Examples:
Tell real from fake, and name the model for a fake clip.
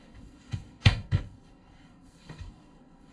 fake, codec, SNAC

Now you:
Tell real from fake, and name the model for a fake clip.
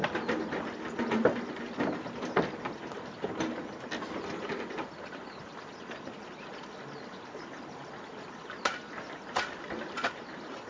real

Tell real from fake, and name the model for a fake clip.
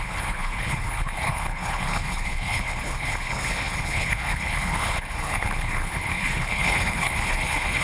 fake, codec, HILCodec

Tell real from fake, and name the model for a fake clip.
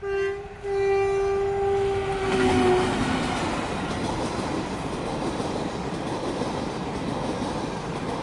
real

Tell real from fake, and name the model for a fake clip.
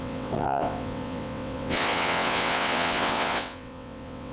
fake, vocoder, WaveNeXt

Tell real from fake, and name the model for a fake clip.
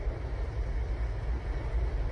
real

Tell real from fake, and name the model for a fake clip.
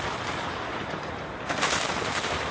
fake, vocoder, BigVGAN v2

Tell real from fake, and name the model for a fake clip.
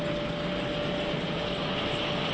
real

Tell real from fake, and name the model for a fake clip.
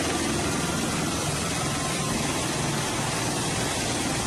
real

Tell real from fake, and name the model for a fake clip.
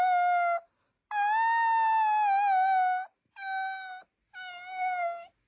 real